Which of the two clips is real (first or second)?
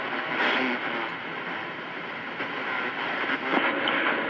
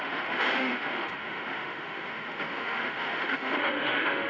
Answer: first